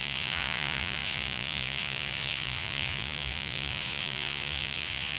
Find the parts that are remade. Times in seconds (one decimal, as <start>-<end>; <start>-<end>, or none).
0.0-5.2